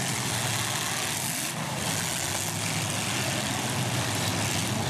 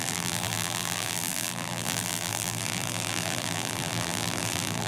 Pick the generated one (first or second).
second